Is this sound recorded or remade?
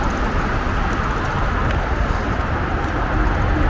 recorded